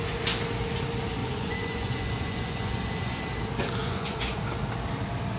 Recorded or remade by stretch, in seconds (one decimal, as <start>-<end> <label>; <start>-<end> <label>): 0.0-1.2 recorded; 1.2-3.2 remade; 3.2-3.8 recorded; 3.8-4.4 remade; 4.4-5.4 recorded